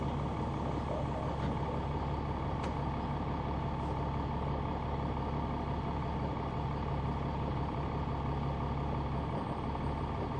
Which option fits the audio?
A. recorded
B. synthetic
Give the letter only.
A